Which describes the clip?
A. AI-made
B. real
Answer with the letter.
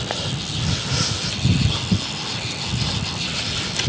B